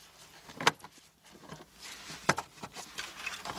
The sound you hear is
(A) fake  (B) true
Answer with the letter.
B